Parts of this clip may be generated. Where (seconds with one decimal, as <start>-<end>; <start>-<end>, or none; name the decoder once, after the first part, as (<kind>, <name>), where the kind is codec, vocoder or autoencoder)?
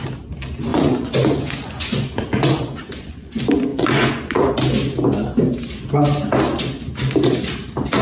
0.7-3.3 (vocoder, Vocos); 3.7-4.5